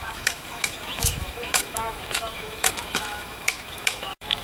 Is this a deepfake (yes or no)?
yes